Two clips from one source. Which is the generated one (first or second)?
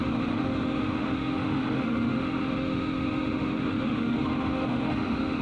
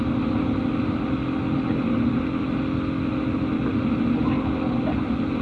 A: first